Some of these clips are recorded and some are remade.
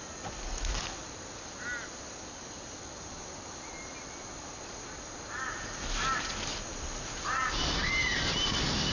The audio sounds recorded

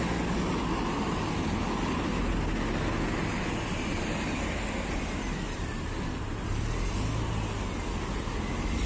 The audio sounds recorded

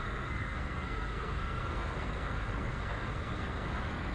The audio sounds remade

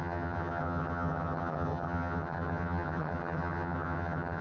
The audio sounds remade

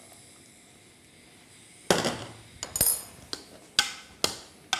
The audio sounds recorded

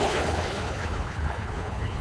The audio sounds remade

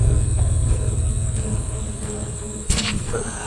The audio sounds remade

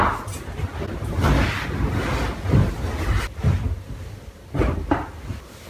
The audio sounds recorded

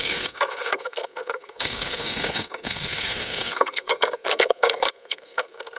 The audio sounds remade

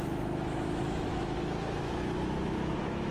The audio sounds remade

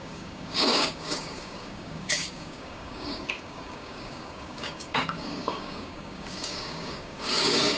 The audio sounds remade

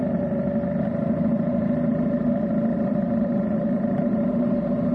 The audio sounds recorded